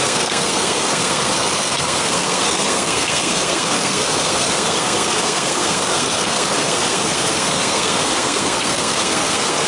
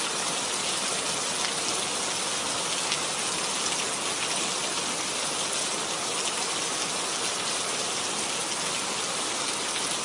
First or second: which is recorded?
second